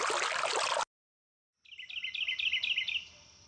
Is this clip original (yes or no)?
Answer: yes